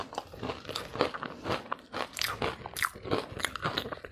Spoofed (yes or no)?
no